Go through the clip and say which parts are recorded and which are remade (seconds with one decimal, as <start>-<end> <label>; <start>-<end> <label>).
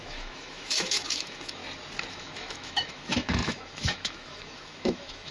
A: 0.0-1.6 remade; 1.6-2.1 recorded; 2.1-5.3 remade